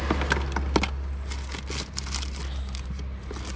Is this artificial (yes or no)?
no